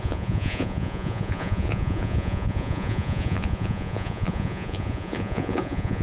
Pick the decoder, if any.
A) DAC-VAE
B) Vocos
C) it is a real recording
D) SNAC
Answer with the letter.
B